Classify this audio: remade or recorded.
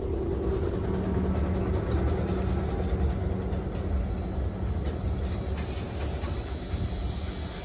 recorded